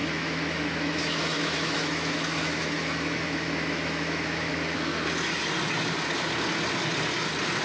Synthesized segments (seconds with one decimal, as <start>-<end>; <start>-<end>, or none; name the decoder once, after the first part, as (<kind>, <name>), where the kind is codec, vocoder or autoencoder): 0.0-4.9 (autoencoder, DAC-VAE)